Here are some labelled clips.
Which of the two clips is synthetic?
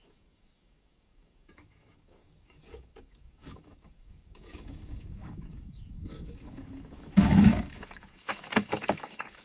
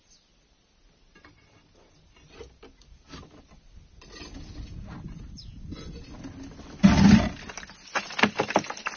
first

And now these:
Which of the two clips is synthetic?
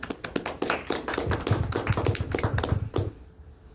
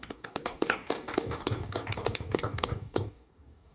second